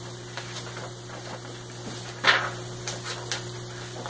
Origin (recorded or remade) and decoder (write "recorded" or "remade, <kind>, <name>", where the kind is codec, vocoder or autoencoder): recorded